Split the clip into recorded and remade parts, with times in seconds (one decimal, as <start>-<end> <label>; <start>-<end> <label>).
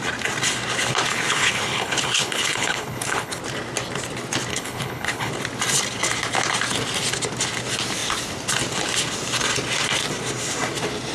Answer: 0.0-1.1 recorded; 1.1-3.4 remade; 3.4-4.5 recorded; 4.5-5.3 remade; 5.3-11.1 recorded